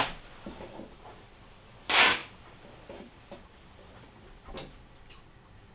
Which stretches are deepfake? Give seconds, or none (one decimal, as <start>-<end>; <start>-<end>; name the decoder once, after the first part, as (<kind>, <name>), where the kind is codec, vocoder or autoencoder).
none